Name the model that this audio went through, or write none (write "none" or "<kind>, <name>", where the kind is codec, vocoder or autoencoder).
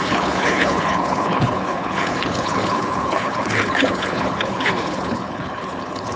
codec, HILCodec